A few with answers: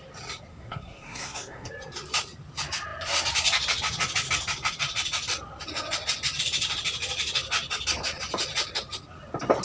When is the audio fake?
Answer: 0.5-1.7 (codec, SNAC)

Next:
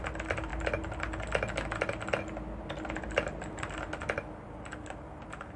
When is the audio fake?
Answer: none

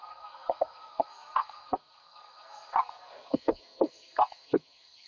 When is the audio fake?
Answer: 0.0-5.1 (codec, SNAC)